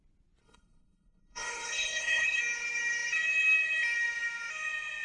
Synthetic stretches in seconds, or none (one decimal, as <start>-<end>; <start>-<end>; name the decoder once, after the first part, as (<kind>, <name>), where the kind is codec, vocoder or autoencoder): 0.4-2.4 (codec, HILCodec)